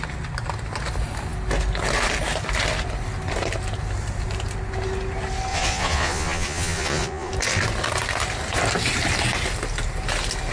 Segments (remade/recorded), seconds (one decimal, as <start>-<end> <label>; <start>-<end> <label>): 0.0-5.5 recorded; 5.5-7.3 remade; 7.3-10.5 recorded